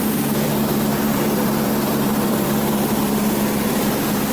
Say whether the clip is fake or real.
fake